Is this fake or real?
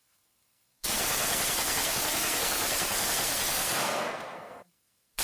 fake